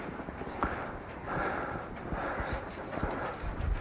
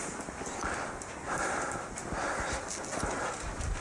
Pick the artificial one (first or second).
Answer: first